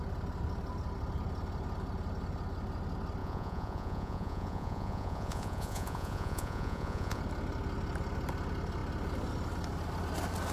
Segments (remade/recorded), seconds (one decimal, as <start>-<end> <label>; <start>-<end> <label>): 0.0-3.2 recorded; 3.2-7.2 remade; 7.2-10.5 recorded